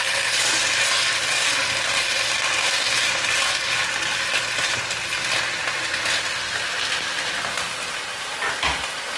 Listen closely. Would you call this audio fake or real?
real